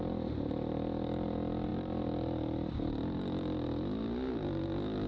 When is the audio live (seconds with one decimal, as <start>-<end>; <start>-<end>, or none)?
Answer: 0.0-5.1